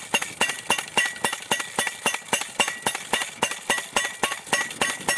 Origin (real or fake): real